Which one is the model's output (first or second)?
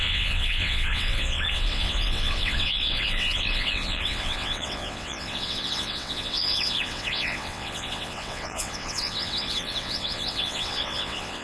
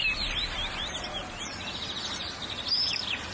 first